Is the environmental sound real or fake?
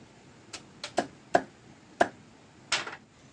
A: real